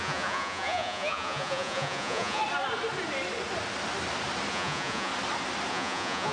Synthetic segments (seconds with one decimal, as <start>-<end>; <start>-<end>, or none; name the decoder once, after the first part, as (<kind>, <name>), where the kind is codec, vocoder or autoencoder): 0.0-2.4 (vocoder, Vocos); 4.5-5.1; 5.7-6.3